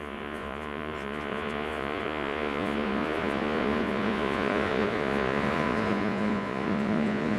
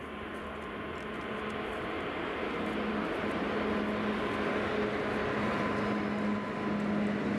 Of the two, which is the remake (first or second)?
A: first